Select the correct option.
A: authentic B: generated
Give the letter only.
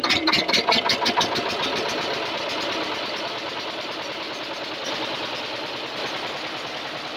A